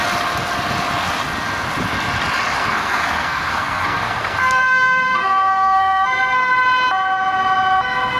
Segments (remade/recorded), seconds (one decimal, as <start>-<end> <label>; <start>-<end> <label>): 0.0-2.6 recorded; 2.6-6.5 remade; 6.5-8.2 recorded